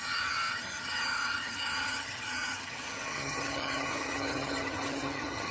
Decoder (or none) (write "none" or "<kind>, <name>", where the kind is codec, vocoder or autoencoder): vocoder, HiFi-GAN